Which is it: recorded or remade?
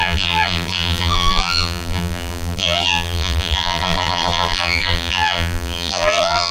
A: remade